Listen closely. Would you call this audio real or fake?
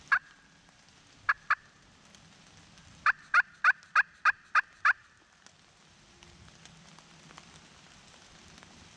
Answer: real